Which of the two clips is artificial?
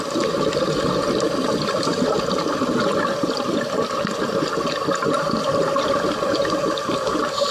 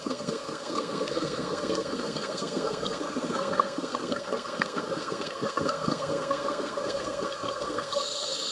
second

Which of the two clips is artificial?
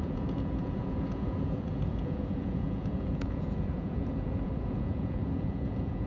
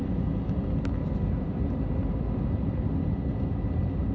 first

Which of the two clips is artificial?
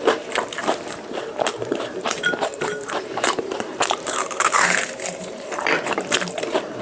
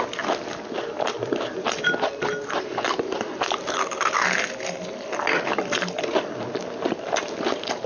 first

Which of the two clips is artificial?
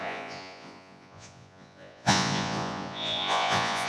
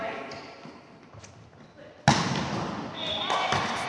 first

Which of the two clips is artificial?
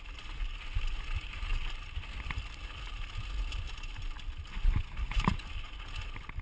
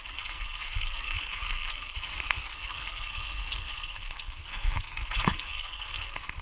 second